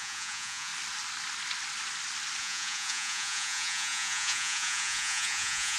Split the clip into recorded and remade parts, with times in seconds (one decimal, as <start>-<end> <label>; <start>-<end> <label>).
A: 0.0-0.7 remade; 0.7-2.4 recorded; 2.4-5.8 remade